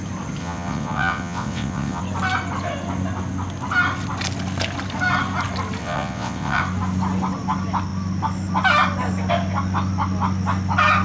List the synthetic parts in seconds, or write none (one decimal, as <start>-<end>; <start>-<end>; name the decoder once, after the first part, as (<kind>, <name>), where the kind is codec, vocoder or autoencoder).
0.4-2.0 (vocoder, WaveNeXt); 5.8-6.6